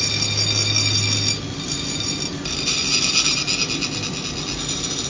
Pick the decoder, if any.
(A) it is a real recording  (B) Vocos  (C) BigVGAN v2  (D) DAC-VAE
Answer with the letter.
A